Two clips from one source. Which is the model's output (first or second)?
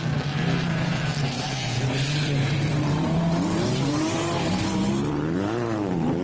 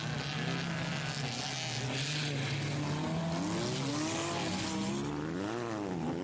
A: first